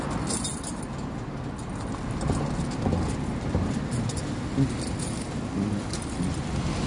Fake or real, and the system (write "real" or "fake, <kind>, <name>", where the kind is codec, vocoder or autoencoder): real